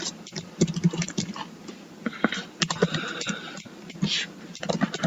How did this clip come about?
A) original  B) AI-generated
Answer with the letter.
A